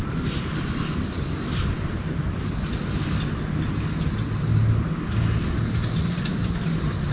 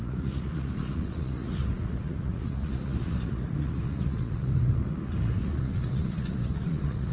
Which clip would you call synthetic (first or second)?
second